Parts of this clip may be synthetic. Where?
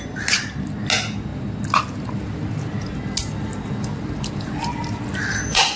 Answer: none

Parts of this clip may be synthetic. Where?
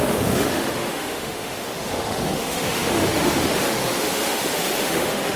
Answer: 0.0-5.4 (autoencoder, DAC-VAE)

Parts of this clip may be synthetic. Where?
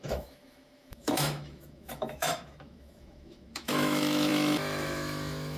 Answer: 0.0-5.6 (autoencoder, DAC-VAE)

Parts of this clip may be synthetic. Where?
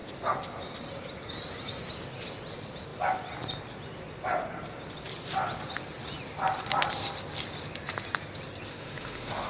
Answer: 8.7-9.5 (autoencoder, DAC-VAE)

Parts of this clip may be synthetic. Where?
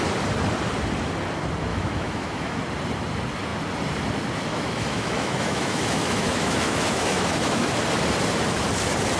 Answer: 1.7-2.6 (autoencoder, DAC-VAE); 4.5-7.8